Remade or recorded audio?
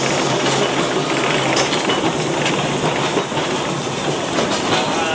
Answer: recorded